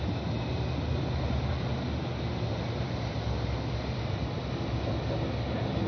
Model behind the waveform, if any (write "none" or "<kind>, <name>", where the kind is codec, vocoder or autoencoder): none